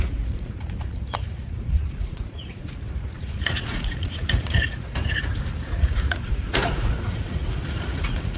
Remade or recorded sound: remade